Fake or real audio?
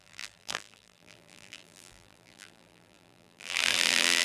fake